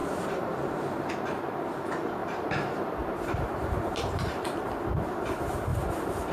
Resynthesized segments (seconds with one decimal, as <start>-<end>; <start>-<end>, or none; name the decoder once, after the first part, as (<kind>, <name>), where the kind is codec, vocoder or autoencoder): 0.0-1.1 (vocoder, BigVGAN v2); 2.2-4.6; 5.7-6.3